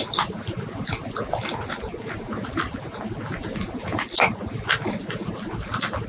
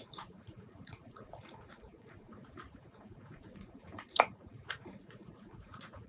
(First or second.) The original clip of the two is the first